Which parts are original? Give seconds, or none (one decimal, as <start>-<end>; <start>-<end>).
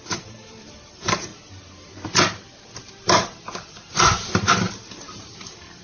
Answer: 1.3-4.8